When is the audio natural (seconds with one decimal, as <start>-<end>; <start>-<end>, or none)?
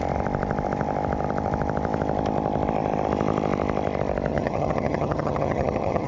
0.0-4.3